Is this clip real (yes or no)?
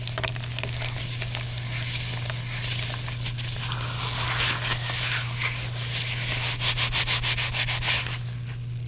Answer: yes